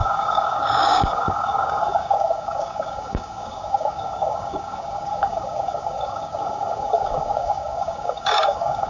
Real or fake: fake